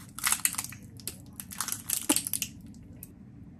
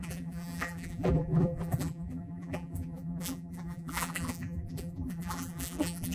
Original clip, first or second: first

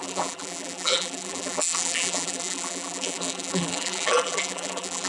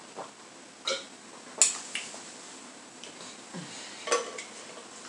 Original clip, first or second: second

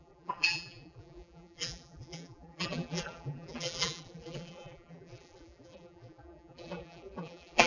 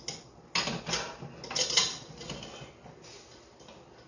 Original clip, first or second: second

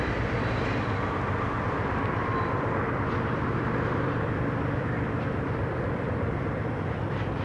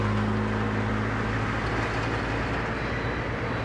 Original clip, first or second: second